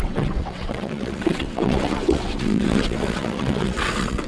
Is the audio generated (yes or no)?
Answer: yes